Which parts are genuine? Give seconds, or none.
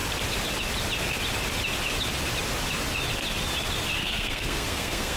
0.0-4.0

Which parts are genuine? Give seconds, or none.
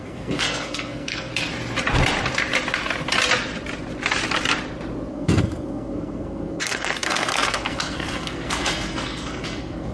1.3-5.1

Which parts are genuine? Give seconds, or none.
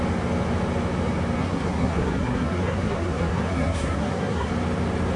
0.0-1.4; 4.5-5.2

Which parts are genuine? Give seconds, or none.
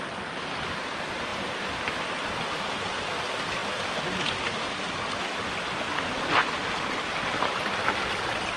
0.0-8.6